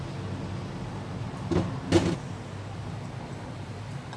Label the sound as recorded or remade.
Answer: recorded